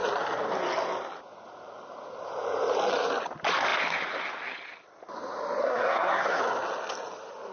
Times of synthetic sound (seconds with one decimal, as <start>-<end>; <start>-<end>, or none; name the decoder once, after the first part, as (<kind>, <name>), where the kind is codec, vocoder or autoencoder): 5.6-6.4 (codec, SNAC)